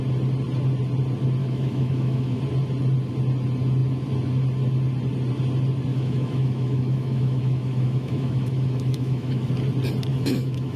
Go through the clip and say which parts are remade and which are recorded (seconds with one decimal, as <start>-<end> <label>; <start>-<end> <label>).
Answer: 0.0-1.4 recorded; 1.4-2.4 remade; 2.4-5.9 recorded; 5.9-9.5 remade; 9.5-10.1 recorded; 10.1-10.8 remade